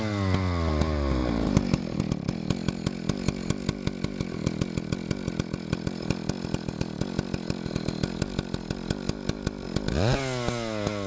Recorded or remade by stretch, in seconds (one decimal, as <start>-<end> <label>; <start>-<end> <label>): 0.0-1.2 recorded; 1.2-2.0 remade; 2.0-11.1 recorded